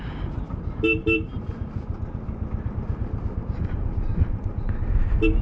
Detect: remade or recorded recorded